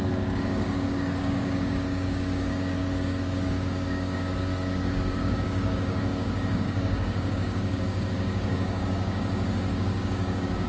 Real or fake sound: fake